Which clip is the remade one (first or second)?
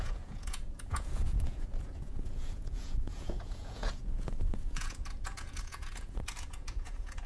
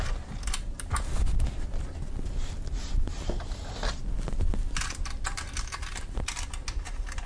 first